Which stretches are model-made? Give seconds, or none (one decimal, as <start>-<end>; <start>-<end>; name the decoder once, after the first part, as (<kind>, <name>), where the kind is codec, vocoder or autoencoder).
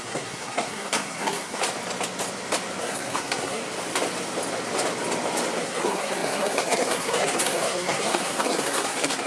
0.0-1.6 (codec, SNAC); 2.8-3.6; 5.6-9.3